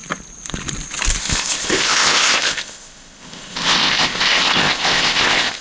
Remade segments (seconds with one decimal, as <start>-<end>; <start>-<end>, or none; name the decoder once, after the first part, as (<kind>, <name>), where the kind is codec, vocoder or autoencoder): 1.2-5.6 (codec, ZipCodec)

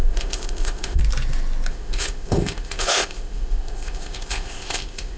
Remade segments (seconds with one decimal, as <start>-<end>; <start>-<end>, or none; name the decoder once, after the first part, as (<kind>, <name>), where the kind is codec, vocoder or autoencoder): 0.0-1.0 (codec, ZipCodec); 1.7-5.2

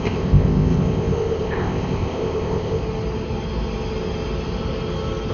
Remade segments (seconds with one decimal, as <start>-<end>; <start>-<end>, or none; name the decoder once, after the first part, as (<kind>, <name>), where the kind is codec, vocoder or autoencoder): 0.0-2.8 (codec, ZipCodec)